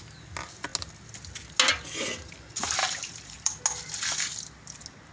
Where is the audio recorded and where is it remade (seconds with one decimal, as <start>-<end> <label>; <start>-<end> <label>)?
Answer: 0.0-2.8 recorded; 2.8-3.6 remade; 3.6-5.1 recorded